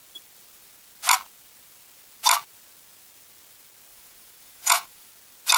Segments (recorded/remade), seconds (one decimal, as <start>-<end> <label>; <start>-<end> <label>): 0.0-3.9 recorded; 3.9-5.1 remade; 5.1-5.6 recorded